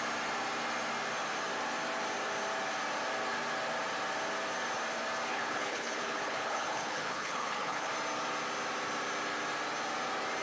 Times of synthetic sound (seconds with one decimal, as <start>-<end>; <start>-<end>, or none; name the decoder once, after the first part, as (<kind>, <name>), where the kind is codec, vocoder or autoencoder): 5.3-7.9 (codec, HILCodec)